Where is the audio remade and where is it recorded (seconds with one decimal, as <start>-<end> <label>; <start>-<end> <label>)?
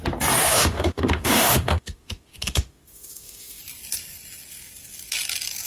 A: 0.0-0.4 recorded; 0.4-3.6 remade; 3.6-5.7 recorded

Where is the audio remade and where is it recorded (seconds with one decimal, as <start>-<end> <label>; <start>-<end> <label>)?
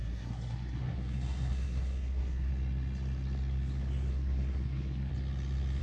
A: 0.0-2.5 remade; 2.5-4.1 recorded; 4.1-5.1 remade; 5.1-5.8 recorded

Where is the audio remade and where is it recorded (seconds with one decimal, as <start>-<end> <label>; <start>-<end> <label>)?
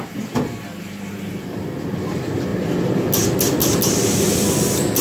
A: 0.0-5.0 recorded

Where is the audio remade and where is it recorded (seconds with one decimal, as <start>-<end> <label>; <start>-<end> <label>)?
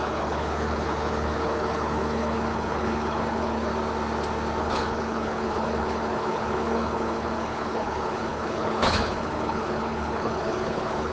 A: 0.0-3.7 remade; 3.7-4.6 recorded; 4.6-11.1 remade